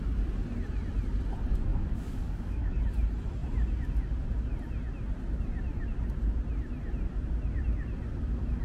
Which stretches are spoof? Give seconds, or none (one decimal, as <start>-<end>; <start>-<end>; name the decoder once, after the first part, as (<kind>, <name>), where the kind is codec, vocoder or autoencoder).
1.7-2.8 (codec, DAC)